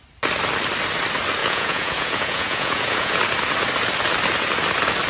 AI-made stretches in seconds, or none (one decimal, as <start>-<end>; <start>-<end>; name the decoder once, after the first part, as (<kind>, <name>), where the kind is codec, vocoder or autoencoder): 1.4-3.2 (vocoder, Vocos)